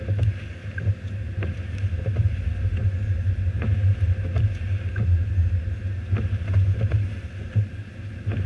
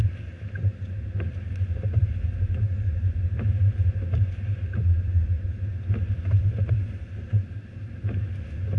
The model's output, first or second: second